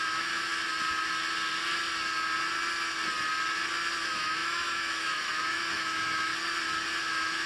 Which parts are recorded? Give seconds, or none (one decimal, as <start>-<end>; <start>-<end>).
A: 0.5-4.0; 6.3-7.0